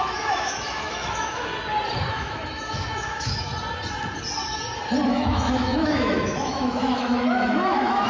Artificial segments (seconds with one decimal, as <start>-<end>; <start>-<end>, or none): 0.0-1.5; 2.1-3.5; 5.1-8.1